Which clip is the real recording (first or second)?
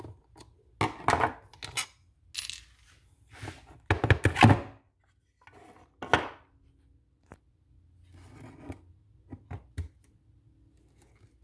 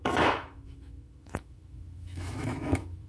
first